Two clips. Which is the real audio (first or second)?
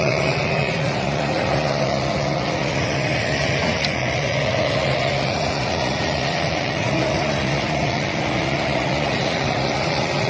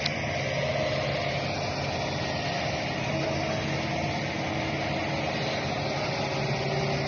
second